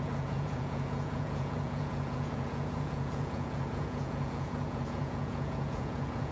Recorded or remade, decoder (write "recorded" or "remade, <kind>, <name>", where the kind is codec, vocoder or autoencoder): remade, vocoder, Vocos